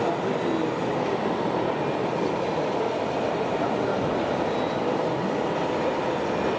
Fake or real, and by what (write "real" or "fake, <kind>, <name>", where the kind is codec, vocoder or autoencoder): real